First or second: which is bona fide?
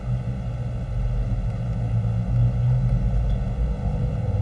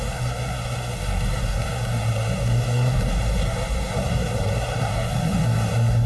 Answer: first